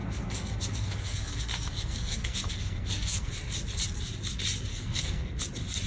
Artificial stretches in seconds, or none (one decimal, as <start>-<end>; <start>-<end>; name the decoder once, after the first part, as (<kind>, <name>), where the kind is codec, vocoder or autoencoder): 0.0-3.3 (codec, SNAC); 4.7-5.4